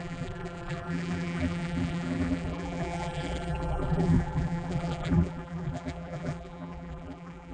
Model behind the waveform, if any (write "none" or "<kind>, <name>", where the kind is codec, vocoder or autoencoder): vocoder, BigVGAN v2